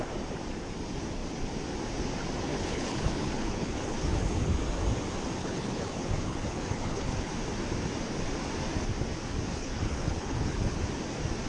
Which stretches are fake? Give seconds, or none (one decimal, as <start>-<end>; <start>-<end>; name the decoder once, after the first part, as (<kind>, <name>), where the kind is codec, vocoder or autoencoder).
2.5-4.5 (codec, HILCodec); 5.4-7.3; 9.5-10.8